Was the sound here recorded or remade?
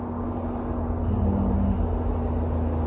recorded